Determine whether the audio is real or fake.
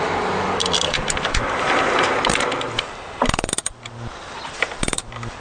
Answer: fake